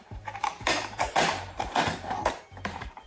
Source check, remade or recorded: remade